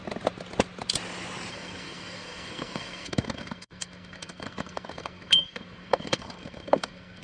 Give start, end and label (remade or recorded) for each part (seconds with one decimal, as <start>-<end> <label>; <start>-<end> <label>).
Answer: 0.0-1.5 recorded; 1.5-7.2 remade